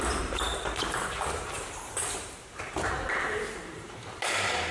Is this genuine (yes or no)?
no